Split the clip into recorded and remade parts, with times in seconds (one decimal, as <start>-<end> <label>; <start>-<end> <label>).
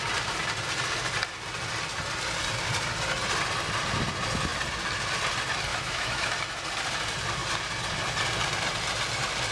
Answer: 0.0-5.7 recorded; 5.7-6.3 remade; 6.3-9.5 recorded